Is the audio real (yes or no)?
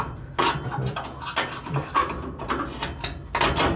yes